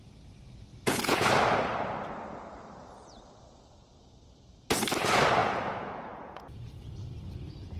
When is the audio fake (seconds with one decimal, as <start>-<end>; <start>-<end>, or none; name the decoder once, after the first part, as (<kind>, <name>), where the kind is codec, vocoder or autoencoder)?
0.7-1.3 (vocoder, Vocos); 5.4-6.9